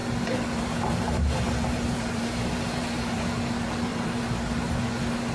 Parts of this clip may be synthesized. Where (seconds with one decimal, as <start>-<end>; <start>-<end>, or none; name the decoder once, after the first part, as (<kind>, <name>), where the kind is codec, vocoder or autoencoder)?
0.0-3.2 (vocoder, BigVGAN v2); 3.9-4.8